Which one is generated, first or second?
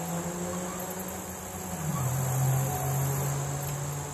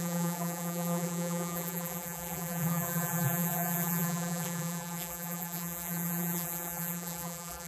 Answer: second